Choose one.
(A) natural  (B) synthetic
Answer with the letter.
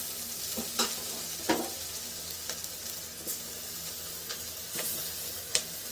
A